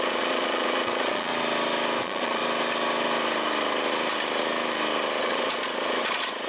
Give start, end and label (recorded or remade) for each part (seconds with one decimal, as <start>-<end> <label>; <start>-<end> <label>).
0.0-1.3 remade; 1.3-2.0 recorded; 2.0-2.4 remade; 2.4-5.2 recorded; 5.2-6.5 remade